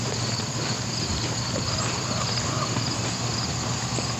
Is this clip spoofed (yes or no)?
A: no